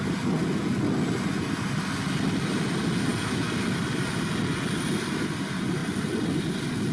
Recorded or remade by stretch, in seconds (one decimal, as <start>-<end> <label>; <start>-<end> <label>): 0.0-6.9 recorded

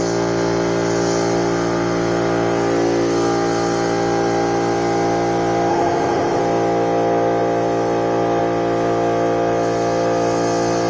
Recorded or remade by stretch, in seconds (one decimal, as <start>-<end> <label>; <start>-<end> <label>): 0.0-5.7 recorded; 5.7-6.4 remade; 6.4-10.9 recorded

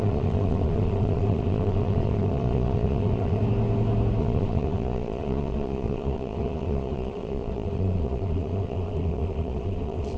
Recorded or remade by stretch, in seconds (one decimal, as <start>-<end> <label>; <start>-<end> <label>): 0.0-3.4 remade; 3.4-4.2 recorded; 4.2-10.2 remade

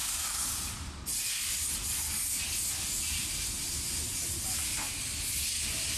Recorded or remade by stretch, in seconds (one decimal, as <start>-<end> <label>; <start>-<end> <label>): 0.0-0.5 remade; 0.5-6.0 recorded